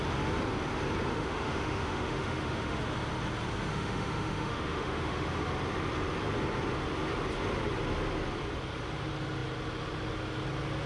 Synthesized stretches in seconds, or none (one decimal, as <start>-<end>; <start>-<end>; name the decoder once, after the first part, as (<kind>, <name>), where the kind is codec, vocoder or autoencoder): 1.1-2.8 (autoencoder, DAC-VAE); 3.7-5.4